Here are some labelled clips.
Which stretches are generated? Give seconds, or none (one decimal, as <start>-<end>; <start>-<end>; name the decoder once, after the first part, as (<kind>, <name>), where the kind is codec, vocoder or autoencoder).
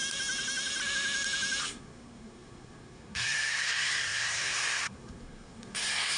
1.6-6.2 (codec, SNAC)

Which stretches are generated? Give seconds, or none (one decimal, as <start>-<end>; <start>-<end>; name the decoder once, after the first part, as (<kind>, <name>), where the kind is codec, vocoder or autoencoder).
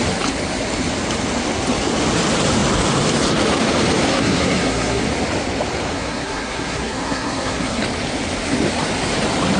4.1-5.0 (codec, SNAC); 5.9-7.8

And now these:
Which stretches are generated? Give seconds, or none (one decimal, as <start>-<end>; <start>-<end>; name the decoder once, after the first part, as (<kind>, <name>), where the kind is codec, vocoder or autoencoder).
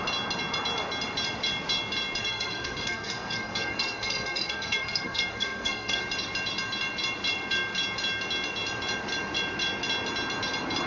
2.2-6.0 (codec, SNAC)